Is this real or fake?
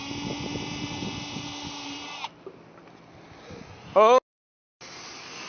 real